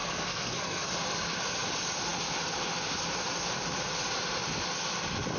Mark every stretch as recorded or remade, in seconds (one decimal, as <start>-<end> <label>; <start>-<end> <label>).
0.0-0.9 remade; 0.9-5.4 recorded